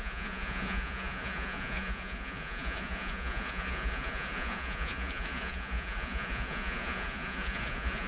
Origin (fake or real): fake